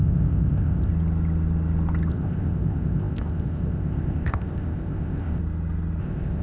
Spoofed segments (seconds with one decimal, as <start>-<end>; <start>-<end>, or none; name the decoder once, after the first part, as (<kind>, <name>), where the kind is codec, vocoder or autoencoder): 0.0-0.9 (codec, ZipCodec); 2.1-5.4; 6.0-6.4